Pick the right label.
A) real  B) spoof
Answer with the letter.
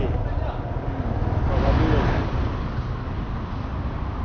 A